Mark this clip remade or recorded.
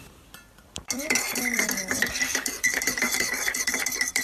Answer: remade